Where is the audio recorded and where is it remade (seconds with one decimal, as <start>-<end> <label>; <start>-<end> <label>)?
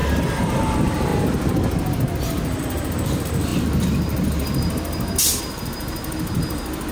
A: 0.0-6.9 recorded